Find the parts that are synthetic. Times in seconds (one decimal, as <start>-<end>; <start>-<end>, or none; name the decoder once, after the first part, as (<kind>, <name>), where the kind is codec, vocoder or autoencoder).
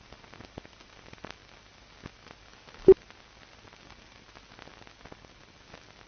none